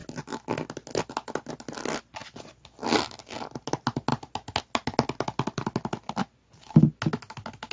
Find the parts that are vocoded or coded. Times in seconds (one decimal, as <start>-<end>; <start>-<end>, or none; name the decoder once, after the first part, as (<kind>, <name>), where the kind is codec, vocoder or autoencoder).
none